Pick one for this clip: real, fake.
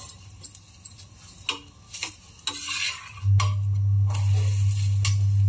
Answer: real